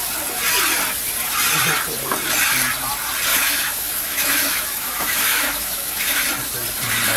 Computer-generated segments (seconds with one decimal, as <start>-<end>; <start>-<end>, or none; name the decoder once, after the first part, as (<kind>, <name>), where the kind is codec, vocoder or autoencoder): 3.3-6.2 (autoencoder, DAC-VAE)